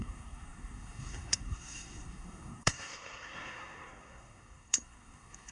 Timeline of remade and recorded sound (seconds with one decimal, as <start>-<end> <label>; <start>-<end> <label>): 0.0-5.5 remade